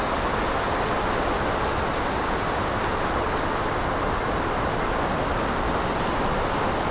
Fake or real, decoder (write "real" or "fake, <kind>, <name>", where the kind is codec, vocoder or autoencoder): real